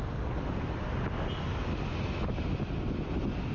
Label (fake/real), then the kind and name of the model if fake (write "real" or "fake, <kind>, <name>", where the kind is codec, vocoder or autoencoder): real